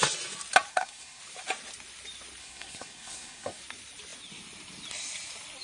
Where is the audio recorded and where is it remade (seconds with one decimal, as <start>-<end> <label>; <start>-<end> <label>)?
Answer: 0.0-0.7 recorded; 0.7-1.2 remade; 1.2-2.4 recorded; 2.4-3.6 remade; 3.6-5.6 recorded

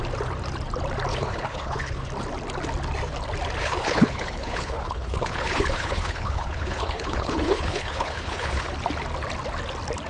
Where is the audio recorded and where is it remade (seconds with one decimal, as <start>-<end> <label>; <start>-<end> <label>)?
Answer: 0.0-1.1 recorded; 1.1-2.1 remade; 2.1-3.6 recorded; 3.6-8.7 remade; 8.7-10.1 recorded

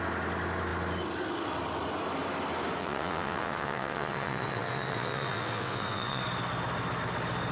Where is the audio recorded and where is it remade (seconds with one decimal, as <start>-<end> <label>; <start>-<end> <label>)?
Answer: 0.0-2.8 recorded; 2.8-6.2 remade; 6.2-7.5 recorded

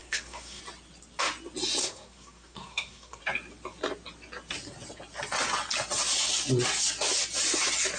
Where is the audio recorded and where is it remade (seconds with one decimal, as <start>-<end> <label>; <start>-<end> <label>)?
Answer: 0.0-0.6 remade; 0.6-1.8 recorded; 1.8-3.2 remade; 3.2-8.0 recorded

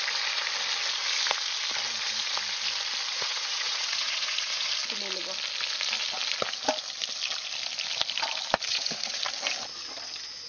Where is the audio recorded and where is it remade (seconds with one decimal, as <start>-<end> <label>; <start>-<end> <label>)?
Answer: 0.0-3.1 recorded; 3.1-4.7 remade; 4.7-8.7 recorded; 8.7-9.2 remade; 9.2-10.5 recorded

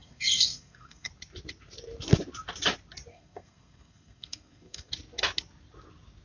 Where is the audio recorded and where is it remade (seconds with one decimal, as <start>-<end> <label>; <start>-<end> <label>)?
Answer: 0.0-1.1 remade; 1.1-3.1 recorded; 3.1-4.9 remade; 4.9-6.2 recorded

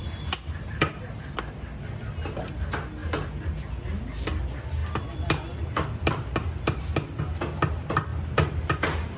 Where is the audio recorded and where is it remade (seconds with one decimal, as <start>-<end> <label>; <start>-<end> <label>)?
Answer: 0.0-9.2 recorded